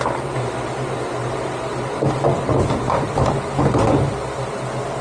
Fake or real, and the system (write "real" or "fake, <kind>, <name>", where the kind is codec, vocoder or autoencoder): real